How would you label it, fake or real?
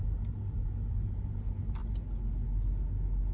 real